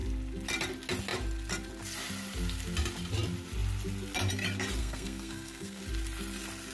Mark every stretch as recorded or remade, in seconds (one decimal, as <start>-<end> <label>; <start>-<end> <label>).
0.0-4.8 recorded; 4.8-5.8 remade; 5.8-6.7 recorded